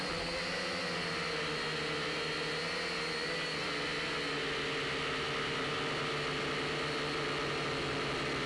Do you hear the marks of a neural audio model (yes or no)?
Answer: no